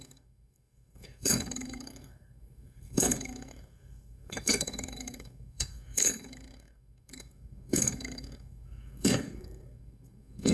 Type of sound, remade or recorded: remade